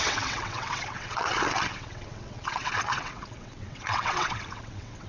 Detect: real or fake fake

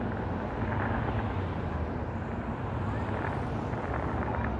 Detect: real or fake real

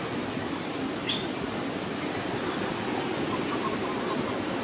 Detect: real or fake real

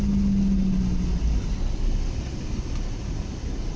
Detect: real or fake real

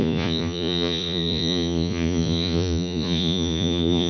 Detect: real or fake fake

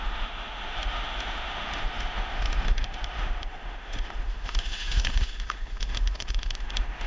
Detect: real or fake fake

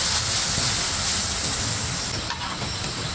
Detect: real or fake real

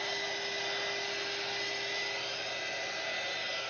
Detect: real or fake real